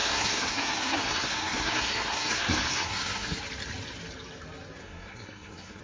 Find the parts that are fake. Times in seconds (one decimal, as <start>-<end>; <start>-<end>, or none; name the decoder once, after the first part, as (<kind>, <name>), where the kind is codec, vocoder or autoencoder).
0.0-3.4 (codec, SNAC); 4.8-5.8